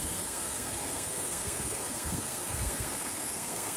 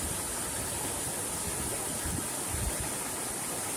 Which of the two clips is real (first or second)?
second